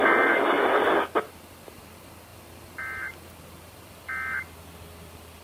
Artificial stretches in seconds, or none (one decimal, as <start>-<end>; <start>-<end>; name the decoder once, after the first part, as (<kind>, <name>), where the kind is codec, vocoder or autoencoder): none